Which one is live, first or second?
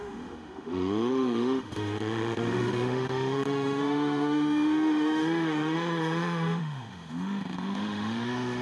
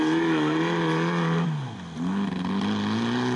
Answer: second